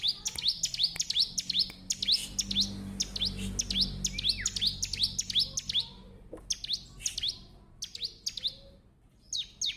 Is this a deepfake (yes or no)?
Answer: no